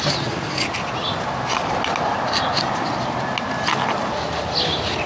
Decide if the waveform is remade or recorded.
recorded